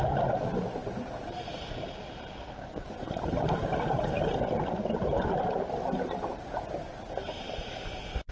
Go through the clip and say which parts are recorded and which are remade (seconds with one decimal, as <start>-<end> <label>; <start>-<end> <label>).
0.0-8.3 recorded